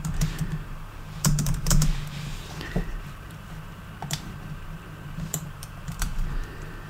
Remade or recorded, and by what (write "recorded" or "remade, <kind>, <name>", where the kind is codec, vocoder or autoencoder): remade, vocoder, BigVGAN v2